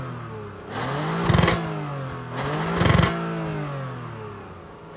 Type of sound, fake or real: real